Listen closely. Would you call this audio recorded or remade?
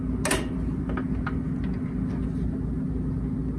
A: recorded